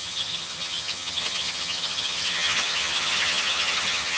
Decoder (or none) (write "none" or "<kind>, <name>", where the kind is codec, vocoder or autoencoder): vocoder, HiFi-GAN